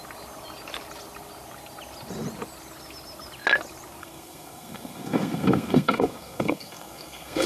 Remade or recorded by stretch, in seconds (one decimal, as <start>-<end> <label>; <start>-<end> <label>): 0.0-4.0 recorded; 4.0-7.5 remade

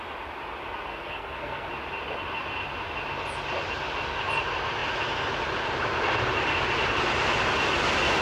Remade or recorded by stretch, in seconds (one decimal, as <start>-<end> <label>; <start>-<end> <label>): 0.0-0.9 recorded; 0.9-1.7 remade; 1.7-8.2 recorded